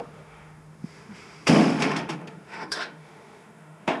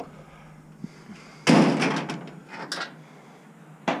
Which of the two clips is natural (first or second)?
second